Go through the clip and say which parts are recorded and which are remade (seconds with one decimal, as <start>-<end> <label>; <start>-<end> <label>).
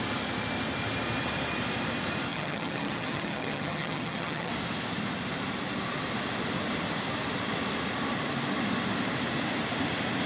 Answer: 0.0-2.3 recorded; 2.3-4.5 remade; 4.5-10.3 recorded